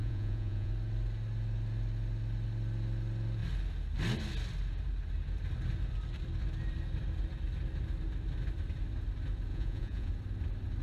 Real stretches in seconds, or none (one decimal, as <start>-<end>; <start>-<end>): 0.7-9.5; 10.1-10.8